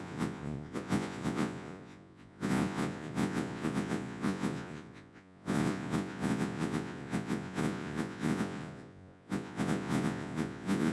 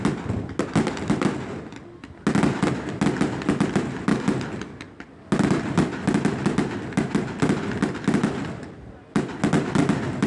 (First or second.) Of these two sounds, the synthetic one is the first